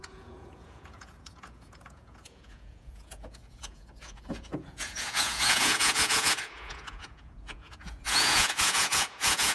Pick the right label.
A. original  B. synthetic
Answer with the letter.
B